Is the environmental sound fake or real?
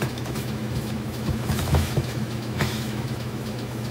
fake